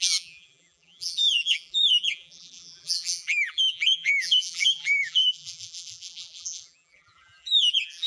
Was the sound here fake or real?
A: fake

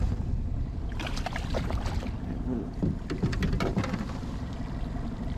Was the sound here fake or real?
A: fake